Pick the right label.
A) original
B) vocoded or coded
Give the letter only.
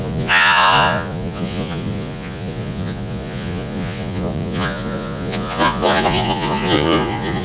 B